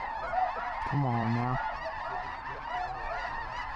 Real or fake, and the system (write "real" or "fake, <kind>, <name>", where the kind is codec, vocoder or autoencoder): fake, vocoder, BigVGAN v2